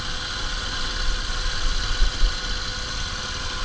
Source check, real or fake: real